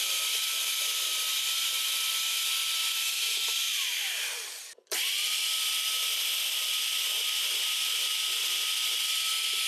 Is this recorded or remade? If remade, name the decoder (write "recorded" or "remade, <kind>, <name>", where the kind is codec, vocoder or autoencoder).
remade, vocoder, BigVGAN v2